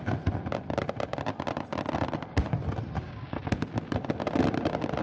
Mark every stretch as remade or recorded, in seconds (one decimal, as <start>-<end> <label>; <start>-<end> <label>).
0.0-3.0 recorded; 3.0-3.4 remade; 3.4-5.0 recorded